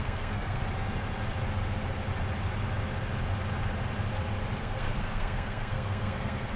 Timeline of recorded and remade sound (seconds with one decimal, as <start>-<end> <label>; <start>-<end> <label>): 0.0-0.6 remade; 0.6-4.6 recorded; 4.6-6.6 remade